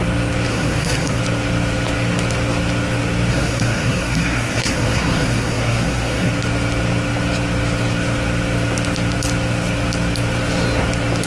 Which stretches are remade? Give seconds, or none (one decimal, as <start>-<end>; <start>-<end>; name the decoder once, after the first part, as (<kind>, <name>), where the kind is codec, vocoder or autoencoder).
0.5-1.2 (codec, SNAC); 3.3-6.3

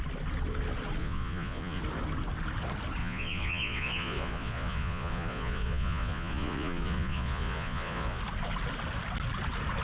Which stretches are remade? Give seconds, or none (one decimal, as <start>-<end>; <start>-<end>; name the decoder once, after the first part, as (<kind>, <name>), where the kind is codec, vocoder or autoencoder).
1.0-1.8 (vocoder, Vocos); 3.0-8.2

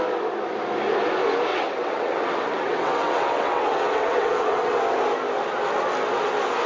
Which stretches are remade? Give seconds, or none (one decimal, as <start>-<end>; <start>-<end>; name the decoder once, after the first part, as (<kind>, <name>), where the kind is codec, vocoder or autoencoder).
1.5-4.8 (vocoder, WaveNeXt)